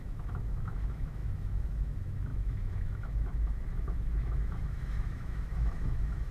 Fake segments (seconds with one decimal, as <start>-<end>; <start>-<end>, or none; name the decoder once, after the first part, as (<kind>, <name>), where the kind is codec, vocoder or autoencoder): 0.0-6.3 (autoencoder, DAC-VAE)